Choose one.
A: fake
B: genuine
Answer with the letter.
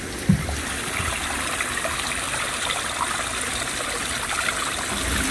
B